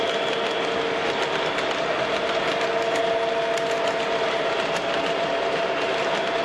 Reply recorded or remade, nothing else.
recorded